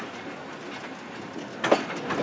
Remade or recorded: recorded